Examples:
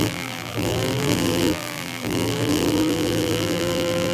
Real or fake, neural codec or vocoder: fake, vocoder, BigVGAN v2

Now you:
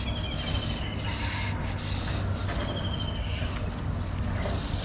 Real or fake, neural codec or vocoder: real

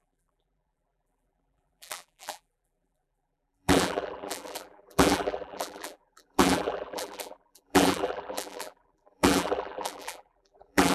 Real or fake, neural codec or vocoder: fake, vocoder, BigVGAN v2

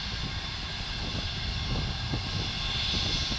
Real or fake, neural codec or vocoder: real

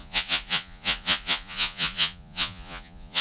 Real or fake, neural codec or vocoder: fake, vocoder, Vocos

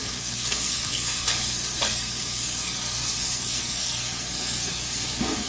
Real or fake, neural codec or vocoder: fake, codec, SNAC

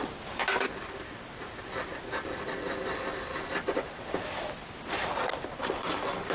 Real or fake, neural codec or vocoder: real